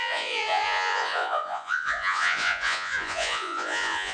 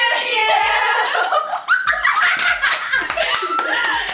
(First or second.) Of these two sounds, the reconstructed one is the first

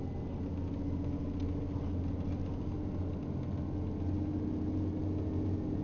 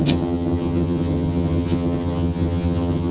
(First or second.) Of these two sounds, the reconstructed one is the second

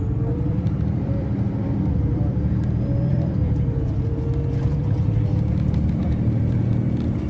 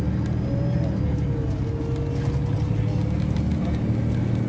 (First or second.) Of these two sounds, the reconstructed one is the first